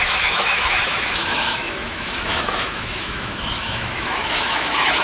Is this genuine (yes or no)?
no